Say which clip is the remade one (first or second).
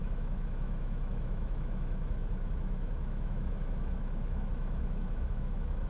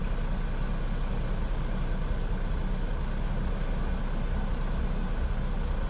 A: first